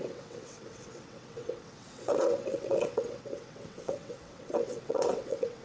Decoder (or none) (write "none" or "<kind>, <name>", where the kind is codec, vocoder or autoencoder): vocoder, WaveNeXt